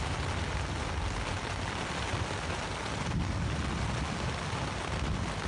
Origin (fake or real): real